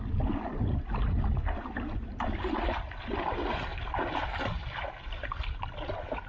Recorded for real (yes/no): yes